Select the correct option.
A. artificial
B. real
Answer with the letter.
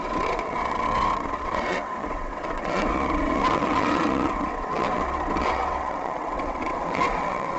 A